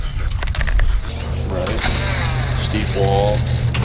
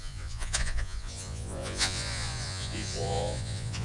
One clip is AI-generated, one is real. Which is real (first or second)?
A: first